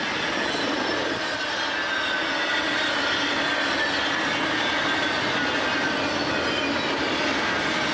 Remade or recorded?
recorded